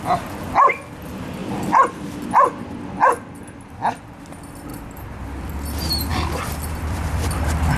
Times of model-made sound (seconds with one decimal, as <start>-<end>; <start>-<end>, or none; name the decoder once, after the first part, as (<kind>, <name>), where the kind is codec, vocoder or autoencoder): 4.7-5.5 (vocoder, BigVGAN v2); 6.1-7.8